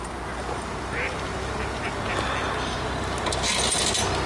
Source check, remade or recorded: recorded